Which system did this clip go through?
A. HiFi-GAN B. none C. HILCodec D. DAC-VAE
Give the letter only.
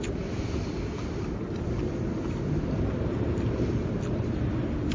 B